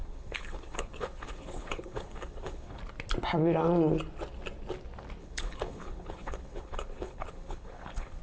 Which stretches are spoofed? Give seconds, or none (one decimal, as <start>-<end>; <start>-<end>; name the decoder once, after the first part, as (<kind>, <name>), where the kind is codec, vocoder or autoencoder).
0.0-2.8 (codec, HILCodec); 5.2-8.2